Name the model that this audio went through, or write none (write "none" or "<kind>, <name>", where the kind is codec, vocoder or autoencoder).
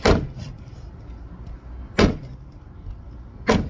none